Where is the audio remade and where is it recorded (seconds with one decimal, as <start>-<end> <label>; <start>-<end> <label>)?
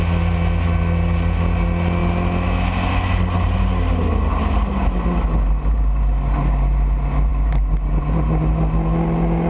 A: 0.0-9.5 recorded